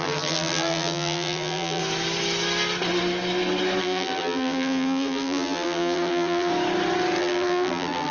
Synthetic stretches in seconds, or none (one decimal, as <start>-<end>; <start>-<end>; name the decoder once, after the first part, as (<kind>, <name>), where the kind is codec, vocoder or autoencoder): 0.0-1.8 (vocoder, BigVGAN v2); 3.8-6.5; 7.2-8.1